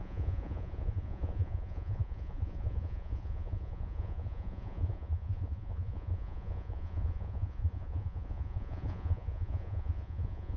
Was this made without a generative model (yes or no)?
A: no